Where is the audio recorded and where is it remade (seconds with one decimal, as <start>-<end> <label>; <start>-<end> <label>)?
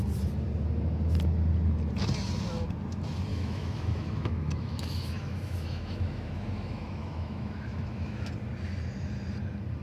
0.0-3.3 recorded; 3.3-8.3 remade; 8.3-9.8 recorded